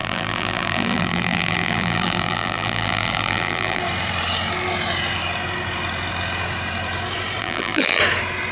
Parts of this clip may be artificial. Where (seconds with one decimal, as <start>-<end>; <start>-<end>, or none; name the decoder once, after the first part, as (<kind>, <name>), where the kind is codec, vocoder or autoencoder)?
0.0-3.8 (vocoder, BigVGAN v2); 7.4-8.0